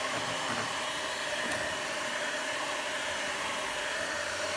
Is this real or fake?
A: fake